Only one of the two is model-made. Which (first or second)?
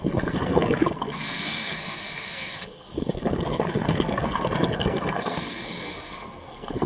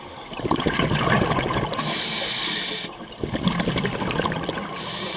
first